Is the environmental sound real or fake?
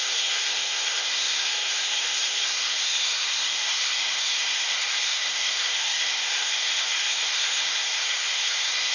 fake